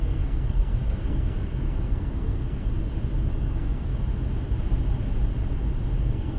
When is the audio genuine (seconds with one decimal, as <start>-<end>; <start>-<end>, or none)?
2.7-3.3; 3.9-6.0

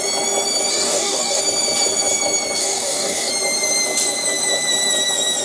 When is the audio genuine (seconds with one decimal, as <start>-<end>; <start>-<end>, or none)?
0.0-0.7; 1.4-2.6; 3.3-5.4

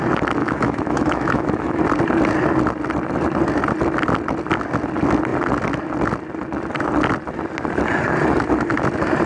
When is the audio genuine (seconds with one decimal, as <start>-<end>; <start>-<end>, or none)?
0.0-0.4; 1.8-9.3

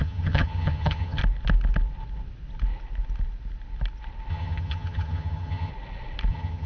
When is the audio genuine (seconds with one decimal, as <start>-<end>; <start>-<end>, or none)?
1.2-4.3; 5.7-6.3

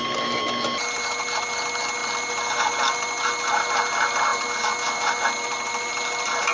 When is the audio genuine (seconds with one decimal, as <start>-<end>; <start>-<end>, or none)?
0.0-6.5

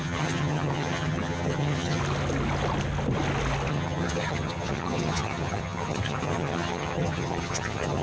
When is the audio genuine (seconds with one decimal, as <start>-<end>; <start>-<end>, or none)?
2.0-3.7